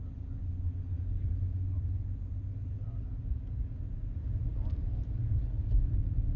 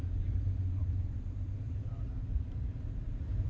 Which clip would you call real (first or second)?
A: first